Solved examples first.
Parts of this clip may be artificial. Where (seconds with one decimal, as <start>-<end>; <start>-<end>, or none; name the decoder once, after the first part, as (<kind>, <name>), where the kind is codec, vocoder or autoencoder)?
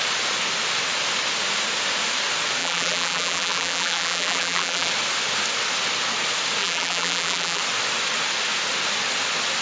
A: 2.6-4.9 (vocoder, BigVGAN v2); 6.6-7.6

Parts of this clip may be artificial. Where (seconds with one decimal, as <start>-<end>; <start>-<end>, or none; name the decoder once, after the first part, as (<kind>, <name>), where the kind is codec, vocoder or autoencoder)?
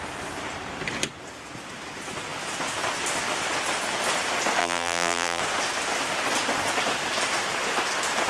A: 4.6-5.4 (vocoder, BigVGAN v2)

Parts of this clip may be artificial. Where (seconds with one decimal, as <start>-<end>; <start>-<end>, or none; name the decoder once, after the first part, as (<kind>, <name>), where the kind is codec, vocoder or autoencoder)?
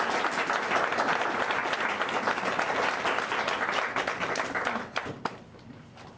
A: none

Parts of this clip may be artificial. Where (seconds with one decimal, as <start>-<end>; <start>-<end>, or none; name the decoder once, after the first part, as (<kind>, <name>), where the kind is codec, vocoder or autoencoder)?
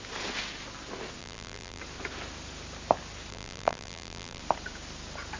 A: 1.2-1.8 (vocoder, BigVGAN v2); 3.3-4.4